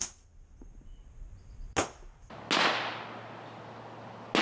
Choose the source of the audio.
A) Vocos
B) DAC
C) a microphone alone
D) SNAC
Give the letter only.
C